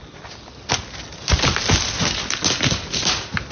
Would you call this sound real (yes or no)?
yes